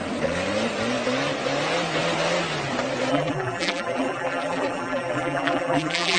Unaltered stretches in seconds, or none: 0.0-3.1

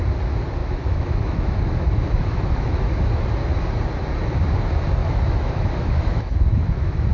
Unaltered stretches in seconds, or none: 0.0-0.6; 3.1-5.0

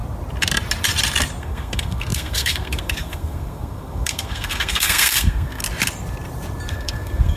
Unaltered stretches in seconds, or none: 0.0-1.4; 5.6-6.7

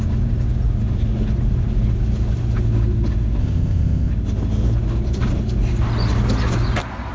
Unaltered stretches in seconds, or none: 0.0-3.4; 4.1-7.1

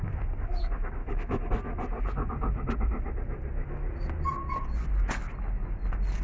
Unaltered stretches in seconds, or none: 0.0-1.0; 1.5-6.2

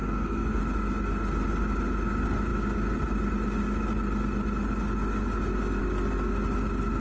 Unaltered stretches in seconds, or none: 0.6-7.0

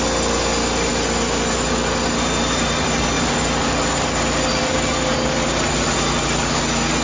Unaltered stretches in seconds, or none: 0.0-7.0

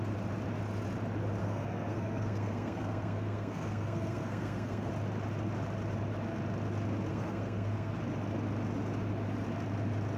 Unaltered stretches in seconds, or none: 0.0-1.4; 4.9-7.1; 8.0-10.2